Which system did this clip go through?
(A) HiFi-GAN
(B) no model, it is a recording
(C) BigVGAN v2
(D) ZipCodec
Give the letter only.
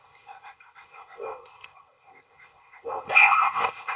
D